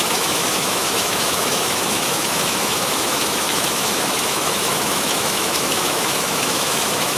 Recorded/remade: remade